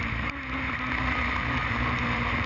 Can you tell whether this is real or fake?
fake